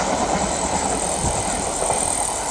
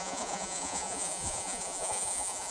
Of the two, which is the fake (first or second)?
second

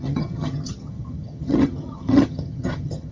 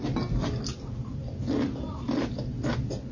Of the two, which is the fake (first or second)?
first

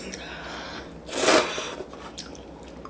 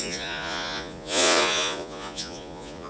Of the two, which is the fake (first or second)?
second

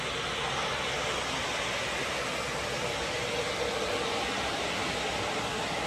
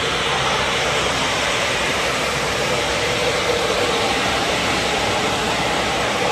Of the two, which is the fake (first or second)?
second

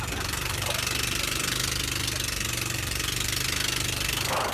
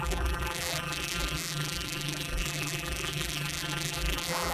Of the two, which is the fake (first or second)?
second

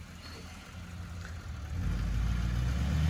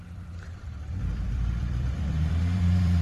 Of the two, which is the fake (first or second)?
second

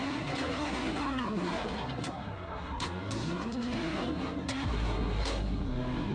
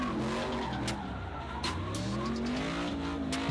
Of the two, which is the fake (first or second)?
first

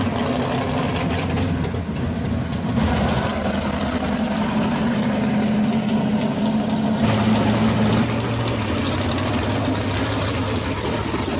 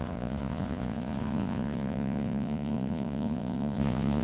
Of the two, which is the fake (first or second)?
second